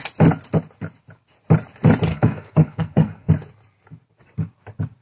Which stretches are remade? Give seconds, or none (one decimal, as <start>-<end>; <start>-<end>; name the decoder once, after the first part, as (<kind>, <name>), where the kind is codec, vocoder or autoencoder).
2.1-3.3 (codec, SNAC)